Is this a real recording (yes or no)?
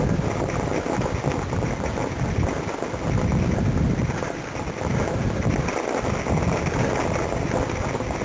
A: yes